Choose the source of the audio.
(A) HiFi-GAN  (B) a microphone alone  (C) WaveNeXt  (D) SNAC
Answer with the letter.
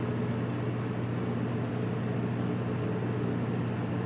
B